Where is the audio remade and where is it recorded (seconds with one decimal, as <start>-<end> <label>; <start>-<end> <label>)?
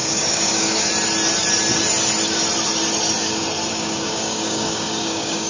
0.0-0.9 remade; 0.9-3.7 recorded; 3.7-5.5 remade